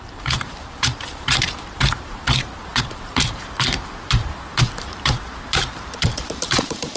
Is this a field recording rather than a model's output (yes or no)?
no